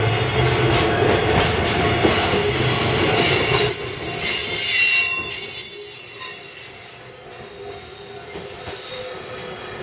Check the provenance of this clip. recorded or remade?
recorded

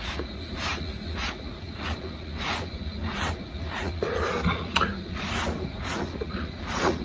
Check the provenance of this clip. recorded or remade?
remade